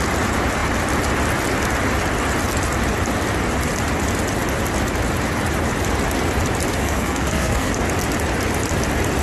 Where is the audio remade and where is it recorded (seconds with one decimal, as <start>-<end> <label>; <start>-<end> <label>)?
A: 0.0-6.8 recorded; 6.8-7.7 remade; 7.7-9.2 recorded